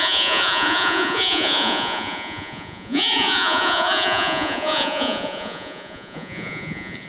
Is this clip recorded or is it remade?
remade